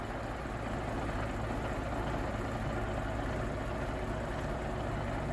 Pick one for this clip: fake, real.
real